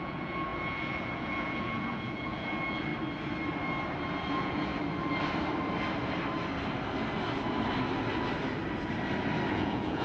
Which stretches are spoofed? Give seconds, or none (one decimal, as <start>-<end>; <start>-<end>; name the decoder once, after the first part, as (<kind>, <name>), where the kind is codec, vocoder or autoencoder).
0.0-2.9 (vocoder, Vocos); 4.3-4.7; 9.5-10.0